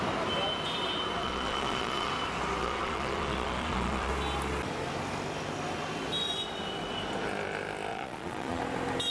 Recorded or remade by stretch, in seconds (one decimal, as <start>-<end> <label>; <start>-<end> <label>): 0.0-1.2 recorded; 1.2-2.1 remade; 2.1-2.6 recorded; 2.6-4.1 remade; 4.1-7.9 recorded; 7.9-8.6 remade; 8.6-9.1 recorded